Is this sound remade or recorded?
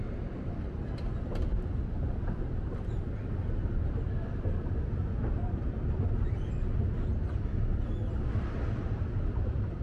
recorded